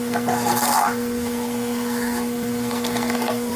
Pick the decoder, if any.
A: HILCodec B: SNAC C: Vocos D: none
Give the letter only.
B